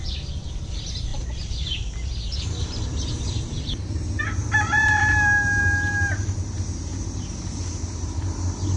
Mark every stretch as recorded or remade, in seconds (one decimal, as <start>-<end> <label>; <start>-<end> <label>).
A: 0.0-6.9 remade; 6.9-7.6 recorded; 7.6-8.8 remade